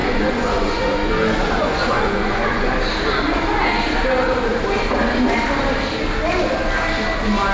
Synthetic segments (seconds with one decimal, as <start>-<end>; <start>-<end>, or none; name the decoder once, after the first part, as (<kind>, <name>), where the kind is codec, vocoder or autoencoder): 0.0-1.1 (vocoder, Vocos); 1.6-2.7